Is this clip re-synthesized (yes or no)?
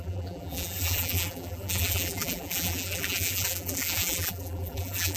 yes